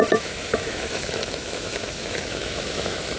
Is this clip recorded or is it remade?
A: remade